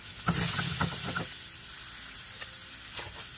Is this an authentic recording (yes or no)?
yes